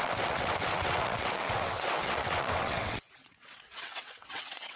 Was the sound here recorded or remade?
remade